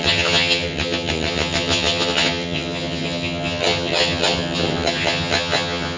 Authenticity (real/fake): fake